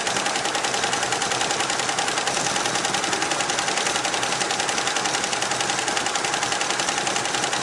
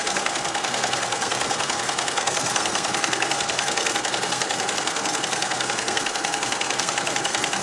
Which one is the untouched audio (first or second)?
first